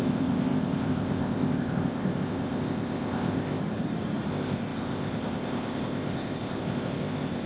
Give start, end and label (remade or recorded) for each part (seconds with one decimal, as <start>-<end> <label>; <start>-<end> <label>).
0.0-3.6 remade; 3.6-4.3 recorded; 4.3-7.5 remade